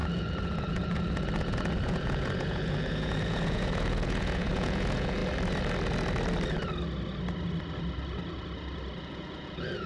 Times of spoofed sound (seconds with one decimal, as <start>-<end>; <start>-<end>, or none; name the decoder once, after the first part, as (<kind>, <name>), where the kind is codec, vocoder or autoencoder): 0.0-5.2 (vocoder, Vocos); 9.0-9.9